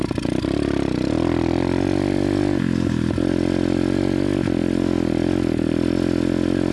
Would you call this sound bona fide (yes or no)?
yes